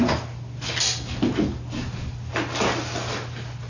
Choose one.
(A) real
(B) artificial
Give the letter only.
A